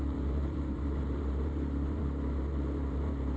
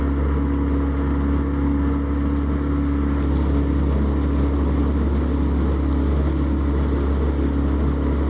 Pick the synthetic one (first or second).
first